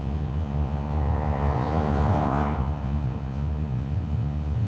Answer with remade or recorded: remade